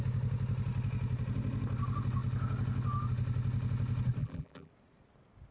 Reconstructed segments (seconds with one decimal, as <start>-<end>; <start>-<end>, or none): 4.2-4.7